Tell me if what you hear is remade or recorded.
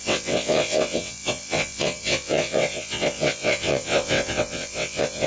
remade